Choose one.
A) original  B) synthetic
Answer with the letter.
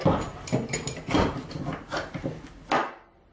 A